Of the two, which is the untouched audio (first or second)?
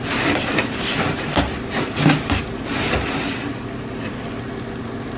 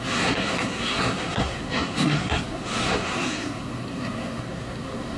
first